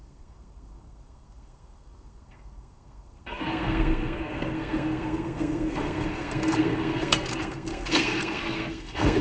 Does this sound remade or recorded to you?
remade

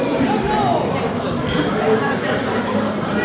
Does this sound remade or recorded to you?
recorded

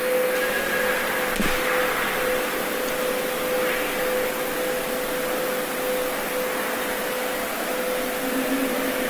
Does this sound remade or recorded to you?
recorded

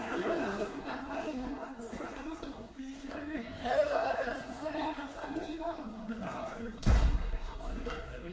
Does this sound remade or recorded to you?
remade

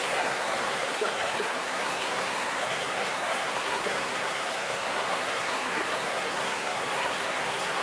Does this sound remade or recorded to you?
remade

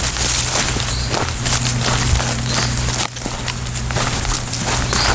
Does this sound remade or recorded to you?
recorded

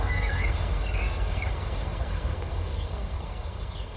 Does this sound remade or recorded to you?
remade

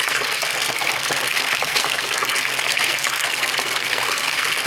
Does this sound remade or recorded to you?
remade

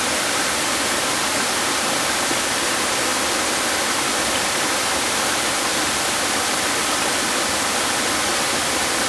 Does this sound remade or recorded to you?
recorded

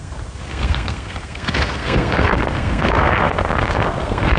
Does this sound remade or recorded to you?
remade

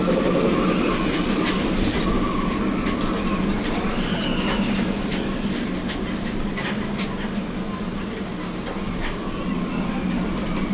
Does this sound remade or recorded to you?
recorded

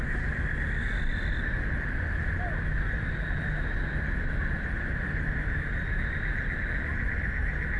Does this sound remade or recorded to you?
recorded